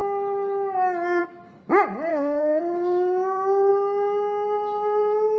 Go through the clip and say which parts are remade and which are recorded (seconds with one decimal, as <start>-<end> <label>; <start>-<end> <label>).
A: 0.0-2.1 recorded; 2.1-2.6 remade; 2.6-5.4 recorded